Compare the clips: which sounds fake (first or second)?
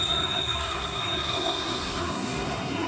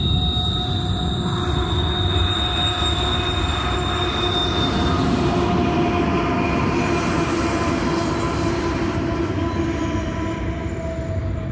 first